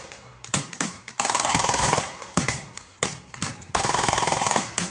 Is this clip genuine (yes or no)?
no